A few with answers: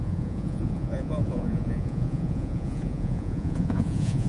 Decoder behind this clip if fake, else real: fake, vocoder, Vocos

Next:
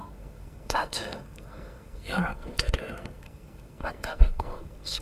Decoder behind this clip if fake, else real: fake, codec, SNAC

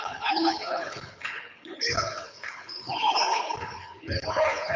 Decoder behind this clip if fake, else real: fake, codec, HILCodec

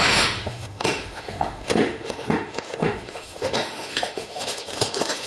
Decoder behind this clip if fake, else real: fake, autoencoder, DAC-VAE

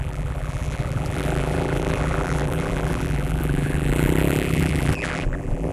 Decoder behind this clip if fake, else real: fake, vocoder, BigVGAN v2